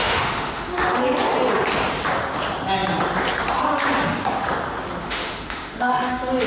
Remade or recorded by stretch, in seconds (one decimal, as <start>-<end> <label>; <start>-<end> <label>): 0.0-1.0 remade; 1.0-5.0 recorded; 5.0-6.1 remade; 6.1-6.5 recorded

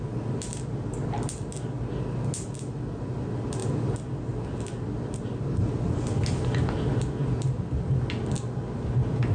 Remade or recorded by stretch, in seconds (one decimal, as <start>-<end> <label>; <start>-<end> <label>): 0.0-9.3 recorded

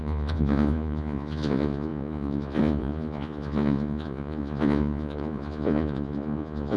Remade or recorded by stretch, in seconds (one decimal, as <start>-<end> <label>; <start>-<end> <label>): 0.0-6.8 remade

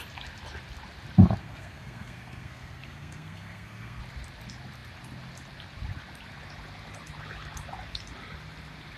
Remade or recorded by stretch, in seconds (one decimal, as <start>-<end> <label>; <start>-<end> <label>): 0.0-1.4 recorded; 1.4-4.0 remade; 4.0-9.0 recorded

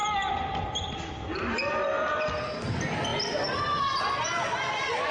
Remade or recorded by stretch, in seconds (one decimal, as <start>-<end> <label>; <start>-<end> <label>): 0.0-5.1 recorded